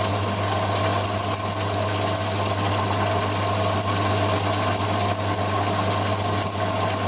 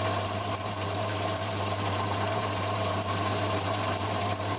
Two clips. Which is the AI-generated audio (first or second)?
second